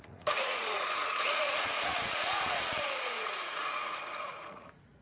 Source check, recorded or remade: remade